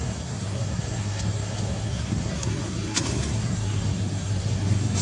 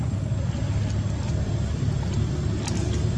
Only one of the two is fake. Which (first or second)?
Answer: first